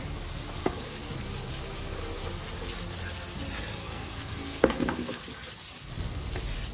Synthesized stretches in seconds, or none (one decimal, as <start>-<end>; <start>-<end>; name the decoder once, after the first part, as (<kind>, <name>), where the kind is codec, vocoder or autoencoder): 0.6-1.1 (codec, SNAC); 3.8-5.2